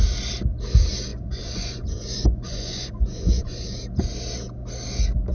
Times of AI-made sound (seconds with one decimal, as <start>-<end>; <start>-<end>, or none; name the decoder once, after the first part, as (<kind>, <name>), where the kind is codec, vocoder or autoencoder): 1.1-3.8 (vocoder, Vocos)